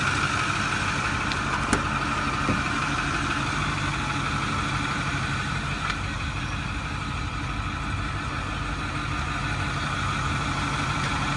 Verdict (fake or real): real